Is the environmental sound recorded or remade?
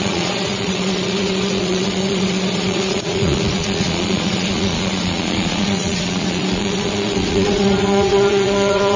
remade